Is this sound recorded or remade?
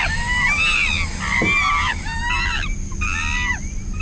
recorded